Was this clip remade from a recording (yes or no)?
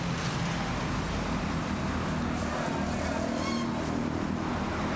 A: no